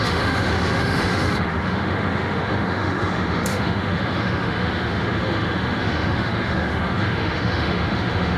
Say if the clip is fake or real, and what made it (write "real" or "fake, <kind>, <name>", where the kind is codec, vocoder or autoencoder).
fake, autoencoder, DAC-VAE